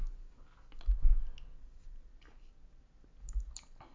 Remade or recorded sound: recorded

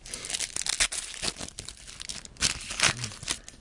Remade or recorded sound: recorded